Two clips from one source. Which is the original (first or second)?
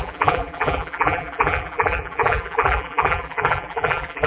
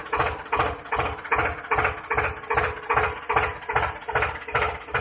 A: second